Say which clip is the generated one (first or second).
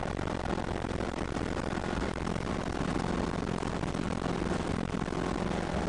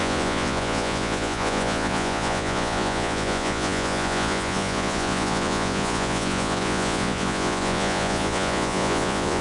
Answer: second